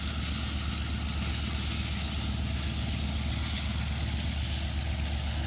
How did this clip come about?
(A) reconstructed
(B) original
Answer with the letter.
B